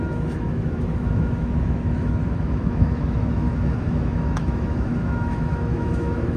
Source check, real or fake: fake